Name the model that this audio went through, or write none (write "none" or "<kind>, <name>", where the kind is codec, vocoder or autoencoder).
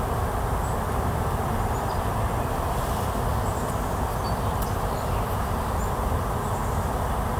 none